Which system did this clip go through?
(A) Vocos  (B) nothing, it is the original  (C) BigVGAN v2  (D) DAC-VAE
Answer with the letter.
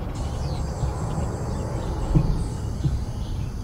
B